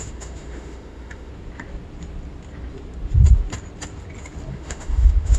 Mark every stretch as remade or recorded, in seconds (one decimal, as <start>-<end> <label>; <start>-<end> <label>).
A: 0.0-1.3 remade; 1.3-4.5 recorded; 4.5-5.4 remade